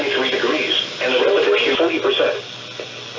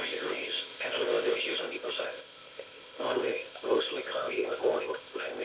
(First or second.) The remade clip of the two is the second